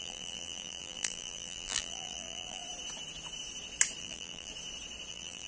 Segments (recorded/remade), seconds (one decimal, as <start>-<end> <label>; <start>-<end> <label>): 0.0-2.6 remade; 2.6-4.0 recorded; 4.0-4.5 remade; 4.5-5.1 recorded; 5.1-5.5 remade